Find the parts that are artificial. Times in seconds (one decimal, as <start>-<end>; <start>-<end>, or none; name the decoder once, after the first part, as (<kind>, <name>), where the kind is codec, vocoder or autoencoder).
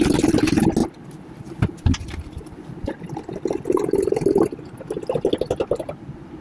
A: none